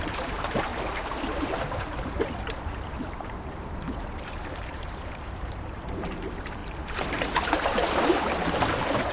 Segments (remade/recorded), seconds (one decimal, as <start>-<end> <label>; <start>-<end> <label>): 0.0-0.7 remade; 0.7-1.2 recorded; 1.2-9.1 remade